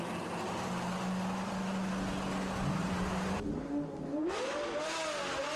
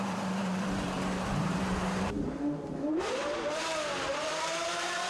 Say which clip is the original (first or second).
first